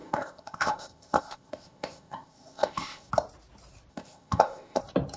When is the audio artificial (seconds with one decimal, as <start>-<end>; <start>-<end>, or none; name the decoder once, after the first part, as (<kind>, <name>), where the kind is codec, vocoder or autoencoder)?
0.0-3.1 (codec, ZipCodec); 3.9-4.8